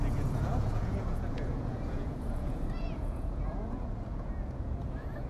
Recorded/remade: remade